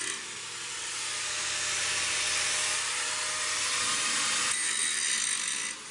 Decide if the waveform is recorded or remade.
recorded